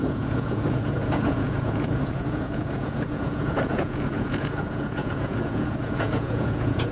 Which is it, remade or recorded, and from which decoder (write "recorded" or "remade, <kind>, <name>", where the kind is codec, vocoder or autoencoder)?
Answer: remade, vocoder, Vocos